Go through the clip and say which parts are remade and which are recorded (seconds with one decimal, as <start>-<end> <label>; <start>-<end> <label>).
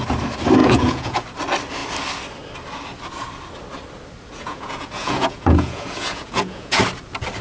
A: 0.0-0.6 recorded; 0.6-1.2 remade; 1.2-4.3 recorded; 4.3-6.8 remade; 6.8-7.4 recorded